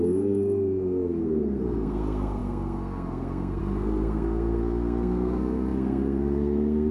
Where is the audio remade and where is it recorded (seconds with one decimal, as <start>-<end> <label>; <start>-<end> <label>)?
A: 0.0-6.9 remade